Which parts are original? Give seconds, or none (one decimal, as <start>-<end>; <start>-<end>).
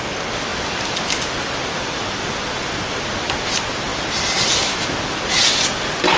0.0-6.2